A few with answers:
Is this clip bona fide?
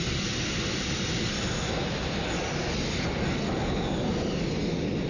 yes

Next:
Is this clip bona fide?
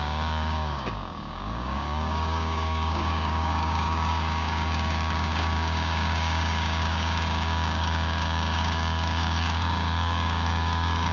no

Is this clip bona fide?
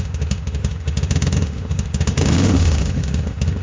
no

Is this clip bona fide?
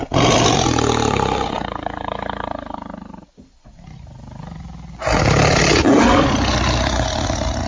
yes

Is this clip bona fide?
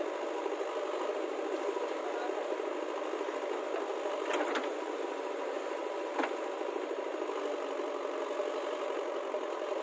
yes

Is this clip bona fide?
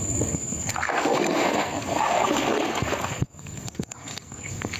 no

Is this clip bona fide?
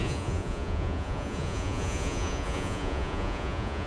no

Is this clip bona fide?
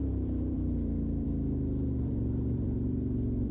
no